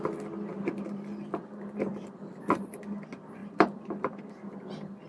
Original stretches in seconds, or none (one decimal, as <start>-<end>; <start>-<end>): 0.0-0.5; 2.8-3.4; 4.3-5.1